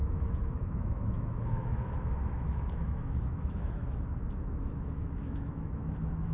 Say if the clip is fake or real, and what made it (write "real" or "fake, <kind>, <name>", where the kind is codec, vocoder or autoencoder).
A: fake, autoencoder, DAC-VAE